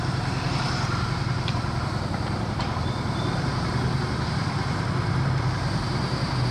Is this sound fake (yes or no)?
yes